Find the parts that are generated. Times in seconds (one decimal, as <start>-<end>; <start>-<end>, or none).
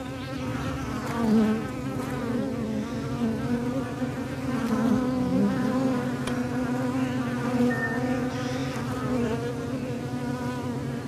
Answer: none